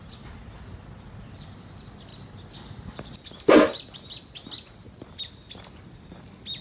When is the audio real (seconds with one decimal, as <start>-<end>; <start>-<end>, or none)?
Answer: 0.0-6.6